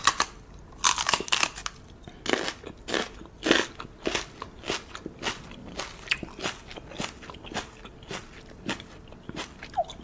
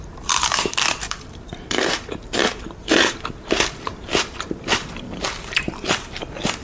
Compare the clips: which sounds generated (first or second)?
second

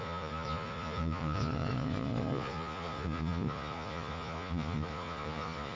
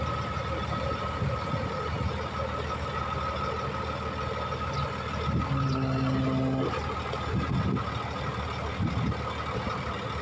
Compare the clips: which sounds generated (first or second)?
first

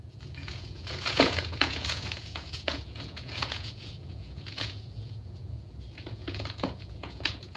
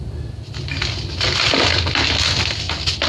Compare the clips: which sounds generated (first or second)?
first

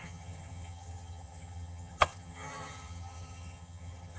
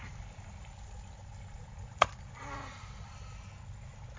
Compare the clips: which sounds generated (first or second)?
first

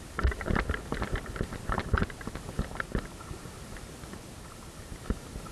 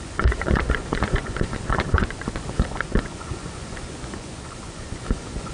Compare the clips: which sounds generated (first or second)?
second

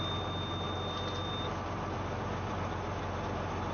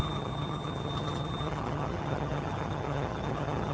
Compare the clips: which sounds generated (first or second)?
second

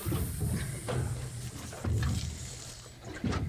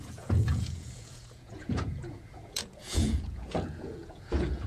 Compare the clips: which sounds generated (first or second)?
second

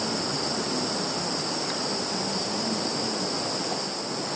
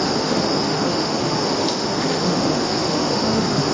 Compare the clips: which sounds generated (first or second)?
second